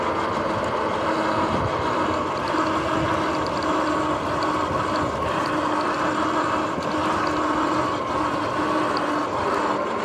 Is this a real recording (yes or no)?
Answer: yes